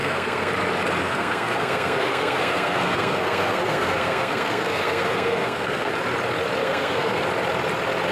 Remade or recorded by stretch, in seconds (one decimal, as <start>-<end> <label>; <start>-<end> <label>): 0.0-0.5 remade; 0.5-1.0 recorded; 1.0-5.9 remade; 5.9-6.6 recorded; 6.6-7.2 remade; 7.2-8.1 recorded